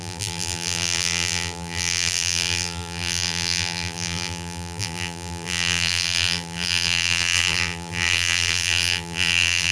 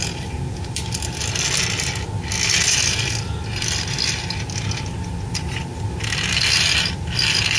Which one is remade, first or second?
first